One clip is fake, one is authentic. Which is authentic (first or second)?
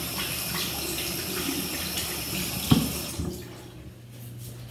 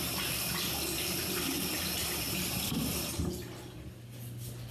first